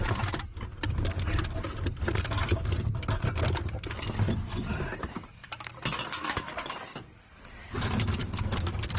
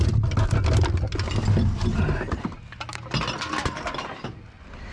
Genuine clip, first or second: second